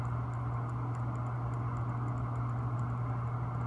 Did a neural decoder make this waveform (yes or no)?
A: no